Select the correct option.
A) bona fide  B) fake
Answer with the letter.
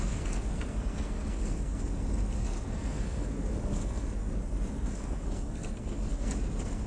B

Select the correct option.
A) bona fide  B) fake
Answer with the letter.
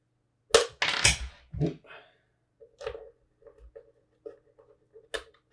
A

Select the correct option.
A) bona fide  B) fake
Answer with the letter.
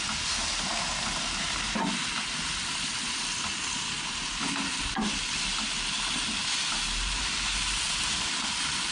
A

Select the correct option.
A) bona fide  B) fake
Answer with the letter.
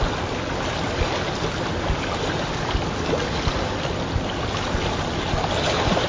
A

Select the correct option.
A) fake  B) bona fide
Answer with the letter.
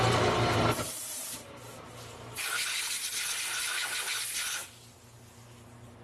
B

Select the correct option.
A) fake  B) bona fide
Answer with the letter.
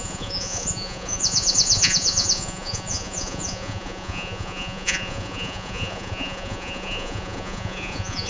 A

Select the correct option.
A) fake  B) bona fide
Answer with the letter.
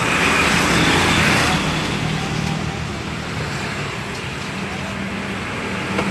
B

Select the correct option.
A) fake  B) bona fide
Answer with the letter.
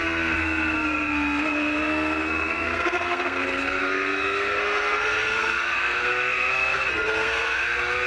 A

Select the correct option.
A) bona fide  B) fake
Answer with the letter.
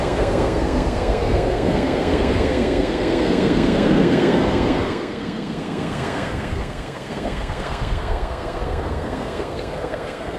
B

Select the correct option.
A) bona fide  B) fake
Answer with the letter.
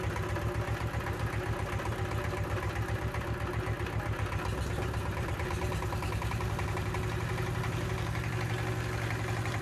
A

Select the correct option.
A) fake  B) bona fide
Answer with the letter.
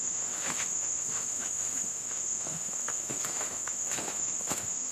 A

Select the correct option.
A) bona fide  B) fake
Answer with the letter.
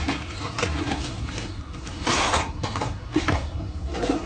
B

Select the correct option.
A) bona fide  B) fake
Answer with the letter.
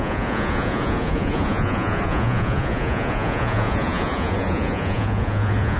B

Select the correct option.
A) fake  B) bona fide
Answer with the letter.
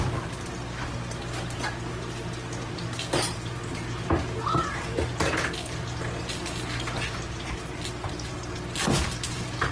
B